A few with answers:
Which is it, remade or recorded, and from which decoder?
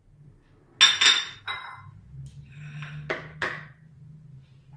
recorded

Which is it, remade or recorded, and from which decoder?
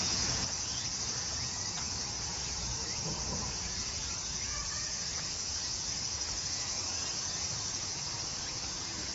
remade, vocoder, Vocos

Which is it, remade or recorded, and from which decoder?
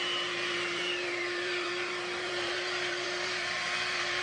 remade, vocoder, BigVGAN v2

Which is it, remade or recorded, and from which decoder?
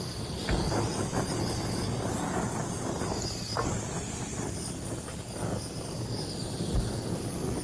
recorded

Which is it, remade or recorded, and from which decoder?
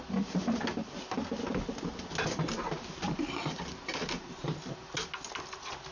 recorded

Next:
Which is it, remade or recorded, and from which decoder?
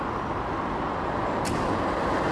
recorded